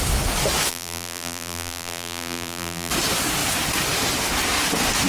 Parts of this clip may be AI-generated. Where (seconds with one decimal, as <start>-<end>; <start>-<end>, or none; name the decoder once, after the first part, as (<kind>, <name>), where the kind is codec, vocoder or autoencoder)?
0.7-2.9 (vocoder, BigVGAN v2)